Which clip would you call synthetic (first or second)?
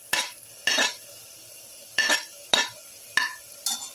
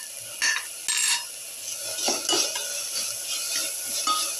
first